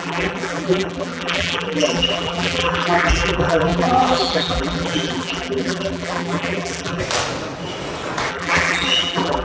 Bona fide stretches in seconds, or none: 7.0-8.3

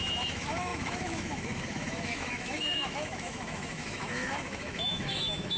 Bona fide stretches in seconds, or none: none

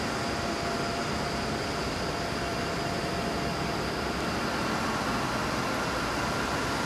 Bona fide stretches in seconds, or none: 0.0-6.9

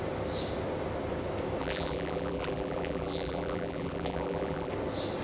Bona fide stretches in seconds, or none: 0.0-1.6; 4.7-5.2

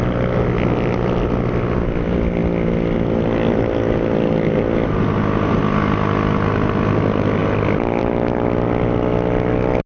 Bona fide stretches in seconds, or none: 0.0-9.9

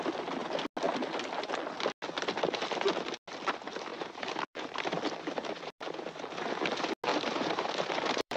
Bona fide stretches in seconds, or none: 0.0-3.9; 6.1-7.1

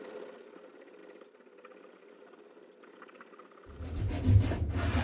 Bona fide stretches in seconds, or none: 0.0-5.0

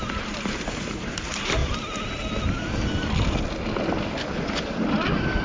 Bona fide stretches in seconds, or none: 1.6-4.1